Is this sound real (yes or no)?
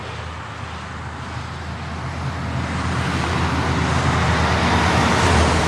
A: yes